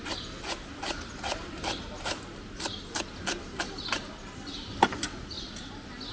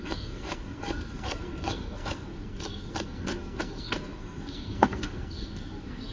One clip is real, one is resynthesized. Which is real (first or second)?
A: first